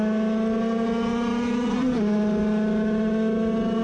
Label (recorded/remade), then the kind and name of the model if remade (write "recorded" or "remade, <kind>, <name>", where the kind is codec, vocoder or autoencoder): recorded